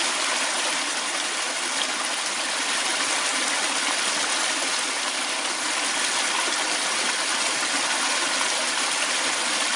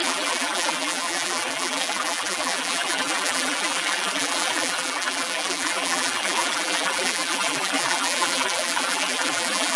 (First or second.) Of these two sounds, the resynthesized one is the second